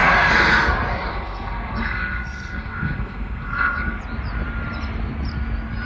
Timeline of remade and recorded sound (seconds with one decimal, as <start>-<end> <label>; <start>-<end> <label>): 0.0-0.7 remade; 0.7-1.1 recorded; 1.1-4.0 remade; 4.0-5.9 recorded